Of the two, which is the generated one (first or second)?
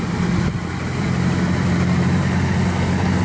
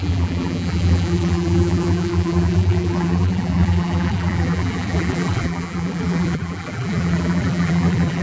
second